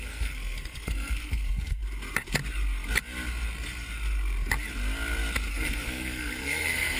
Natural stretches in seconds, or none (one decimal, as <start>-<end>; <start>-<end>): 1.8-5.5